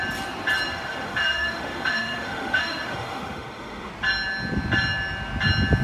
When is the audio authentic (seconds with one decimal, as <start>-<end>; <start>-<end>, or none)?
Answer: 0.0-0.7; 3.9-5.8